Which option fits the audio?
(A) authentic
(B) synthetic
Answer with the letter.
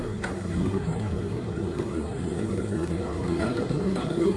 B